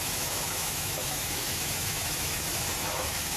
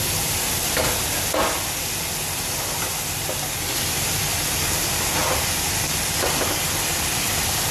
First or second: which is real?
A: second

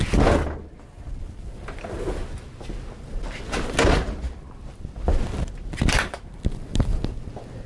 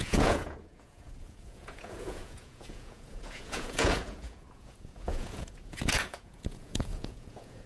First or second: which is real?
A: first